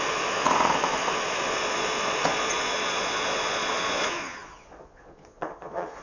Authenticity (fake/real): fake